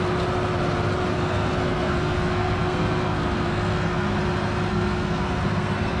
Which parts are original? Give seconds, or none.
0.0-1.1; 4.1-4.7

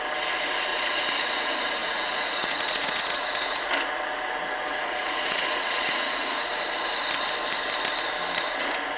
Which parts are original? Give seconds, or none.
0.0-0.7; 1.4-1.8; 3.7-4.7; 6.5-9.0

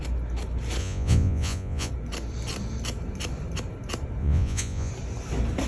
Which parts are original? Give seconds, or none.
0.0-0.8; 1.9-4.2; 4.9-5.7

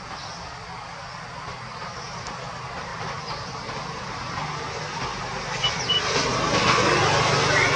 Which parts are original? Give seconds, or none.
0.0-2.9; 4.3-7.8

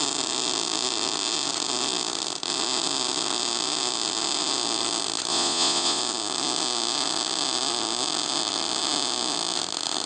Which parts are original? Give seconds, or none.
0.0-5.3; 6.0-10.1

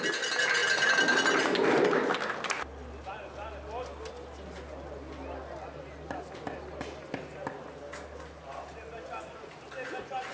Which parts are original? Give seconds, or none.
0.0-10.3